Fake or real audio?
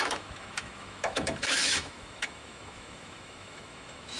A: fake